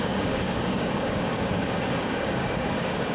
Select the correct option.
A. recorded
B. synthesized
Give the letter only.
B